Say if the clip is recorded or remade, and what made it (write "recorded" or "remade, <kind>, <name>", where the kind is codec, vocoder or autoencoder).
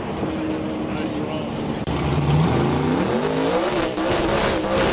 recorded